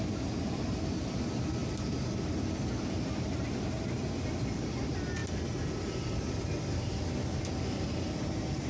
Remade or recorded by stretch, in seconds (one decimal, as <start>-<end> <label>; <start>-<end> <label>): 0.0-8.7 recorded